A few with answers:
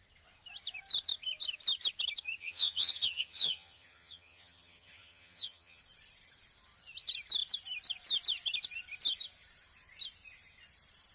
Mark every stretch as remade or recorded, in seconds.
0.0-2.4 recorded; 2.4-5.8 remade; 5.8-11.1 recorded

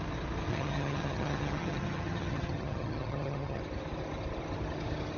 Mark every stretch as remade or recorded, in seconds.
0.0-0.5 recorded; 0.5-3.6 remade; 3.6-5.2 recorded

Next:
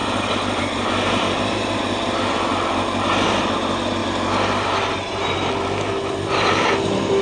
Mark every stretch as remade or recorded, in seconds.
0.0-7.2 recorded

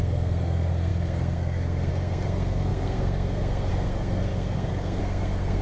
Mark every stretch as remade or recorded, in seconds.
0.0-5.6 remade